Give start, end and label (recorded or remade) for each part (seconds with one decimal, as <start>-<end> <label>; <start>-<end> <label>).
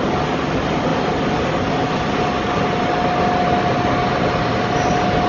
0.0-5.3 recorded